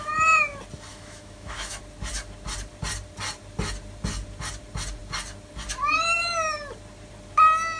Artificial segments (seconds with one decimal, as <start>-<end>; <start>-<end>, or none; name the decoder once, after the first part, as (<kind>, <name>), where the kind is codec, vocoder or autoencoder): 0.9-1.8 (autoencoder, DAC-VAE)